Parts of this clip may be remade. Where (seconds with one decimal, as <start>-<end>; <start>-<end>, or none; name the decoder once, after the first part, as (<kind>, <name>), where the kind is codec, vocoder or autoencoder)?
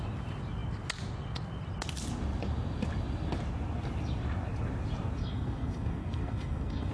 5.2-6.9 (codec, SNAC)